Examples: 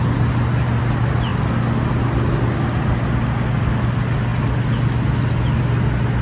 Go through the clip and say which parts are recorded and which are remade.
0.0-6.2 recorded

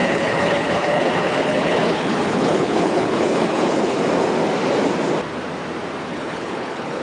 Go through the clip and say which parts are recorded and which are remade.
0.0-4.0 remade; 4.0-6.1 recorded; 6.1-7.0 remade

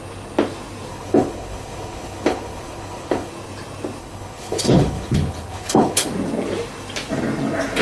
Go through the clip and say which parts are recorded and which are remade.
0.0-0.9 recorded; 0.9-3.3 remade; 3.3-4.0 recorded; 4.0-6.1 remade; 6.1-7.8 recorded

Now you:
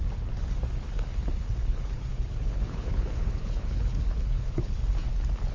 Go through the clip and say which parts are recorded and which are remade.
0.0-1.6 recorded; 1.6-4.8 remade; 4.8-5.5 recorded